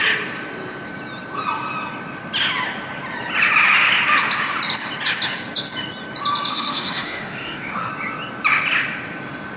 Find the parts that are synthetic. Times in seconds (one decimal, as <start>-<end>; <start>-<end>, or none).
6.5-7.9